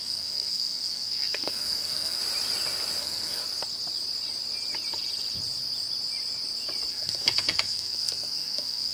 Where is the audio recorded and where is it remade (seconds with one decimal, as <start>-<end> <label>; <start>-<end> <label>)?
0.0-2.2 remade; 2.2-3.0 recorded; 3.0-3.4 remade; 3.4-6.9 recorded; 6.9-8.9 remade